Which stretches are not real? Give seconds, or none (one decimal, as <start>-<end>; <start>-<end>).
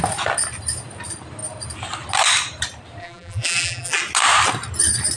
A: 3.0-4.0